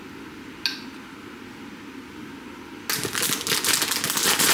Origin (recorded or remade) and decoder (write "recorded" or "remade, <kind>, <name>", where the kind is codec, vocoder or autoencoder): recorded